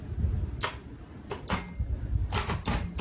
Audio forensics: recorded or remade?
recorded